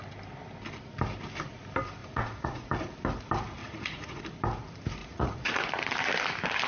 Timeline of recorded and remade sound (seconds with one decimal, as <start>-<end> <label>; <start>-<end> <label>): 0.0-2.0 recorded; 2.0-2.7 remade; 2.7-3.6 recorded; 3.6-4.2 remade; 4.2-5.0 recorded; 5.0-5.7 remade; 5.7-6.7 recorded